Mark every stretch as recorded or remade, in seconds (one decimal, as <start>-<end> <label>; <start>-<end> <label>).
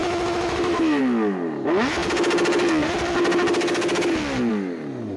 0.0-1.0 remade; 1.0-5.2 recorded